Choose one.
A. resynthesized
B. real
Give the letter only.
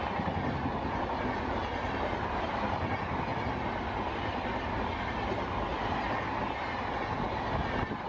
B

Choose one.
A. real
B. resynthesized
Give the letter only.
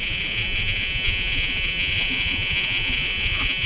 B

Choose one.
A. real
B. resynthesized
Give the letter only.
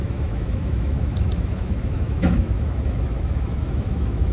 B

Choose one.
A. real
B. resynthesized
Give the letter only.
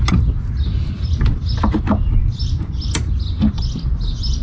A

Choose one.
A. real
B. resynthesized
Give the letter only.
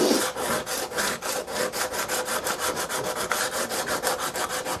A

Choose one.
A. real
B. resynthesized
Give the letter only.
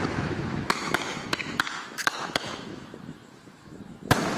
B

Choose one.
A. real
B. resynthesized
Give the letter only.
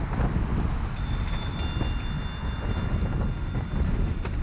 A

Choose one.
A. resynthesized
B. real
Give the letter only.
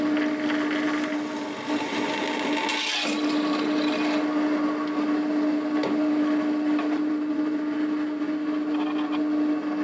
B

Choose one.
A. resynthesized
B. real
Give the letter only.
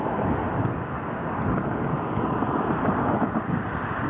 B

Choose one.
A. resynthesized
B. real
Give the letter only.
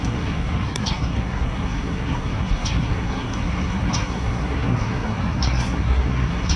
A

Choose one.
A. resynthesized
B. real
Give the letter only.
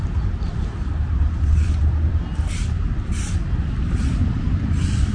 A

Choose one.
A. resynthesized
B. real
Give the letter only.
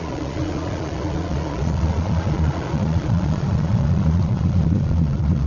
A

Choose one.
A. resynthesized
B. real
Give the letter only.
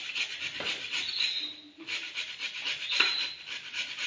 B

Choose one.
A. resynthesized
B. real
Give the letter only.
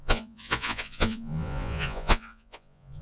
A